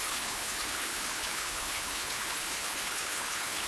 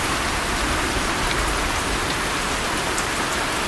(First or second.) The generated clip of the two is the first